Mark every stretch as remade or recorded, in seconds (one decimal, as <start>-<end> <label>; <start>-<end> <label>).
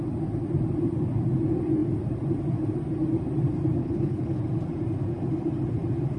0.0-3.8 recorded; 3.8-4.4 remade; 4.4-6.2 recorded